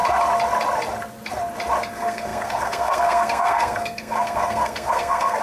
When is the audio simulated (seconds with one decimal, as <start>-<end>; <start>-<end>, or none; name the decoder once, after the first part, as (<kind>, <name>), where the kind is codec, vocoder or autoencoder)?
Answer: 1.9-5.4 (codec, SNAC)

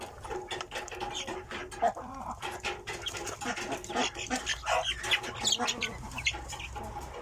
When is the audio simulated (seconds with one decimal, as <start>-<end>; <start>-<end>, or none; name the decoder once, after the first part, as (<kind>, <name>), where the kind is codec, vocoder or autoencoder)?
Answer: none